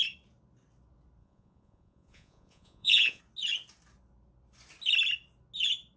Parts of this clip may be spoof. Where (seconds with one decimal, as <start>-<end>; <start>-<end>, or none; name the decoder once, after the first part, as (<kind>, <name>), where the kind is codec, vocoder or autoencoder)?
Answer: 1.2-3.2 (vocoder, Vocos)